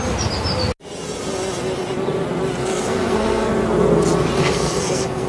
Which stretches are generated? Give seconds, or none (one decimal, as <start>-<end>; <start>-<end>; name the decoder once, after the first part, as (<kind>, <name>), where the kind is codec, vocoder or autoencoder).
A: 2.6-3.5 (codec, SNAC); 4.4-5.3